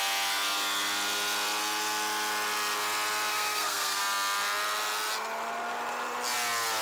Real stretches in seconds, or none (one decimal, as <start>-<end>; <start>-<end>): 0.0-3.3; 4.0-6.8